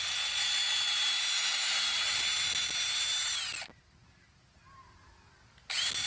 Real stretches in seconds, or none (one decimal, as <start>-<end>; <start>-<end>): 0.0-6.1

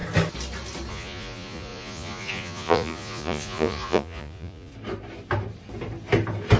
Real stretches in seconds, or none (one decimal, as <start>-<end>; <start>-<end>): 0.0-0.9; 4.7-6.6

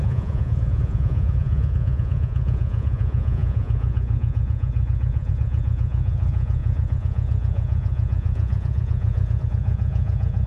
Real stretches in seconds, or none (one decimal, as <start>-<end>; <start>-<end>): none

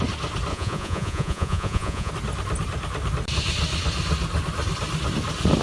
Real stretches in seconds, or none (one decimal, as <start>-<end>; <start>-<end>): 0.0-0.5; 2.1-5.6

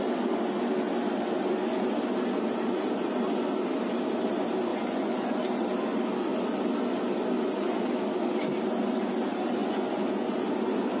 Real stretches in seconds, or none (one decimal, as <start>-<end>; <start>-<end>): 0.0-4.7; 5.4-9.6; 10.4-11.0